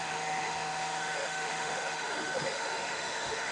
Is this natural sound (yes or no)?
no